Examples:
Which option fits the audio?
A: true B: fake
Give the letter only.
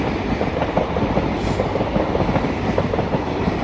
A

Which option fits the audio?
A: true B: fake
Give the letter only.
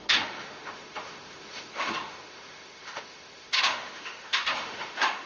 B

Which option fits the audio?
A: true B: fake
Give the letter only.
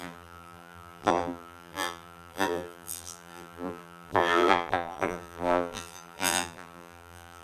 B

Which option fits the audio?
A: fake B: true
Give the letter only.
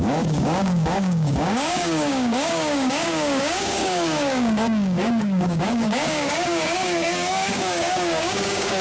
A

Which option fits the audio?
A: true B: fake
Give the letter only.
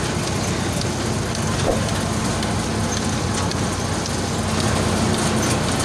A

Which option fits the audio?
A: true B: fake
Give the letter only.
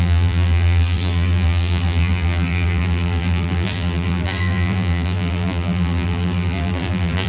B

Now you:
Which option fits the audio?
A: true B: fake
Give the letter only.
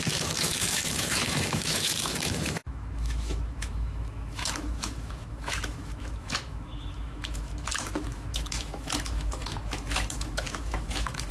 B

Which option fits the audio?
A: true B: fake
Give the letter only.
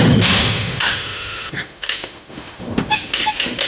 B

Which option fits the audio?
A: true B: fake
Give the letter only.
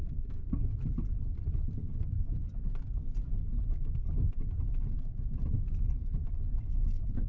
B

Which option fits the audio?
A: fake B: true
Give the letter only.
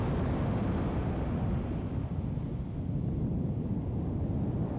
B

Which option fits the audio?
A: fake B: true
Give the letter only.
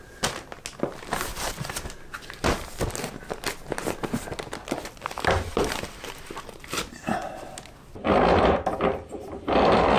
B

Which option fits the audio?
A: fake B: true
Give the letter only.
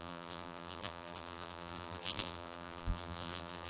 A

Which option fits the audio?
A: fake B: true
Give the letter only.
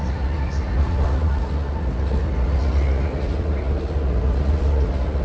A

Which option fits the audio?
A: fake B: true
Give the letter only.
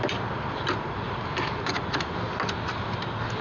B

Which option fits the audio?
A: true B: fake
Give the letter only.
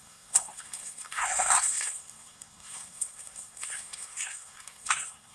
B